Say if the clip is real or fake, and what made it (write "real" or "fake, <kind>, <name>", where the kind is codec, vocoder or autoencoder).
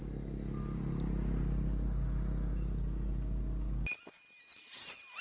real